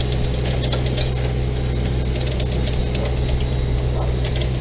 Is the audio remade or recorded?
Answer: recorded